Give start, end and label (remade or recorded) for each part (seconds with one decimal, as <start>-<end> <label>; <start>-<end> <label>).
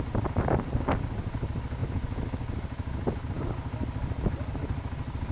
0.0-5.3 recorded